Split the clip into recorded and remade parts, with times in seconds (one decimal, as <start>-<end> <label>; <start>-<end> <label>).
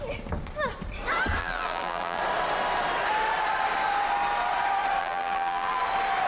0.0-1.4 recorded; 1.4-2.2 remade; 2.2-5.0 recorded; 5.0-5.8 remade; 5.8-6.3 recorded